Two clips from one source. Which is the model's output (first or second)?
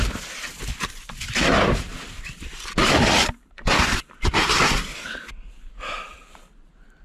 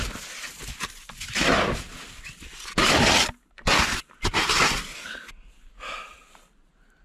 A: first